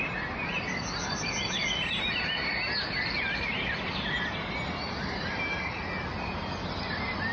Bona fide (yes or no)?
yes